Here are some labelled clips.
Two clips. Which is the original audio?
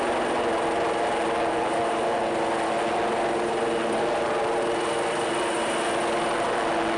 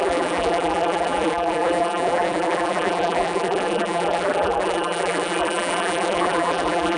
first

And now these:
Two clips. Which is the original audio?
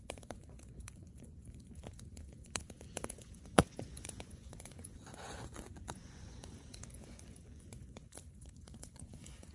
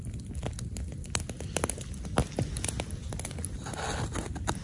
second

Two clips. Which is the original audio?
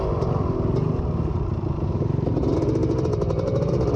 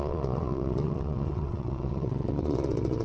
first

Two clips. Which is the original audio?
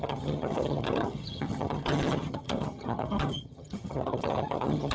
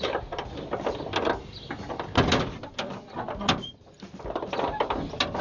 second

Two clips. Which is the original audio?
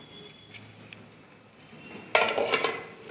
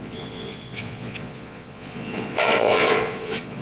first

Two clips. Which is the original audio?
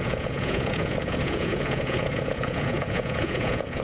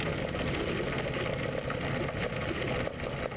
second